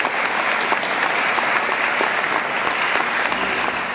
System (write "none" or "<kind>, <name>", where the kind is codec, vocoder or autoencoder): none